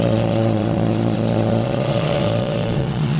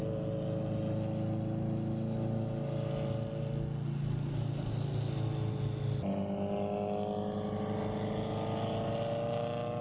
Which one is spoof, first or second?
first